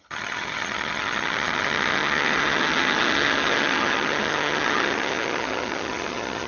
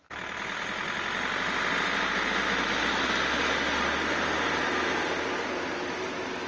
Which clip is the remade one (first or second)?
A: first